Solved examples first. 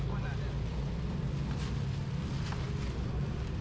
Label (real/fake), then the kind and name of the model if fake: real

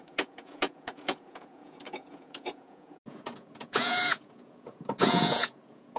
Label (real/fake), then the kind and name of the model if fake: fake, vocoder, Vocos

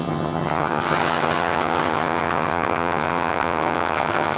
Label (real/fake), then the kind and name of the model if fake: fake, vocoder, HiFi-GAN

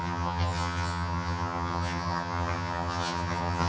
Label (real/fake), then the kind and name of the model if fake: fake, vocoder, HiFi-GAN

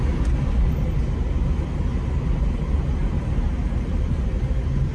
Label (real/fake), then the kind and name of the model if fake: real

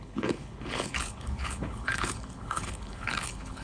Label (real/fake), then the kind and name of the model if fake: fake, codec, HILCodec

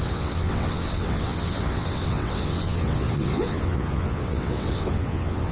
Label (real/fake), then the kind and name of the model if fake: fake, vocoder, WaveNeXt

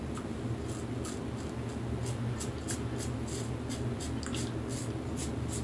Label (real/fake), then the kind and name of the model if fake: real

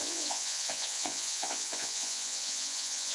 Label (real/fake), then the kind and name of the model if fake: fake, vocoder, Vocos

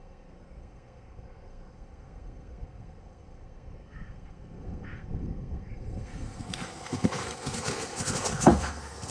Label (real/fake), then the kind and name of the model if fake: fake, codec, SNAC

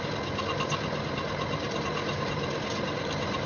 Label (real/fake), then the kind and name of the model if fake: real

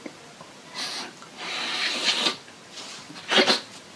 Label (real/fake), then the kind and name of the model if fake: real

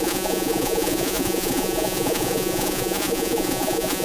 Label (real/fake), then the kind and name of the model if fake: fake, vocoder, Vocos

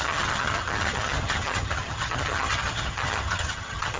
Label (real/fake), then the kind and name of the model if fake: fake, vocoder, HiFi-GAN